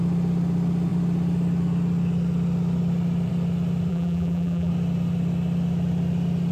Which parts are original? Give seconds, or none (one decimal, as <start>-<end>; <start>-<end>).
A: 0.0-3.9; 4.7-6.5